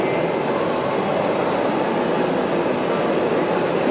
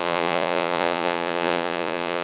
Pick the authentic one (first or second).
first